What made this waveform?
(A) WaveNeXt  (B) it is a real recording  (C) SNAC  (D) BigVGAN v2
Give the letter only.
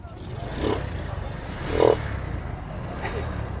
B